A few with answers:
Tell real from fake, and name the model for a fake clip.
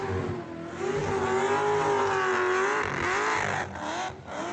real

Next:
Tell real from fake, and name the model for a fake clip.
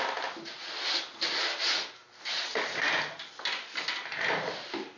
real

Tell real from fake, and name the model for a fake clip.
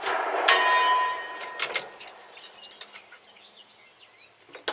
real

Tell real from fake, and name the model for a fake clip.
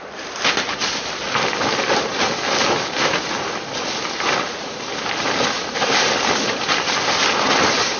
real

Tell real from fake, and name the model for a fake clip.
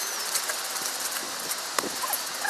real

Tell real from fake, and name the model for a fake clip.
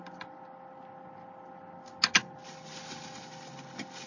real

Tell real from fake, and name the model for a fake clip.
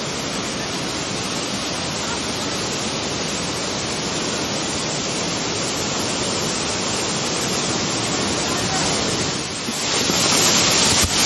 real